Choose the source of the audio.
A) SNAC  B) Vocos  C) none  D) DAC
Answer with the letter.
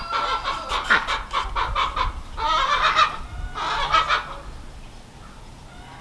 C